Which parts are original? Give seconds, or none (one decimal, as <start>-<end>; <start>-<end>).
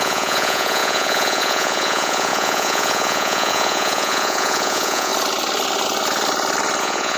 5.1-6.8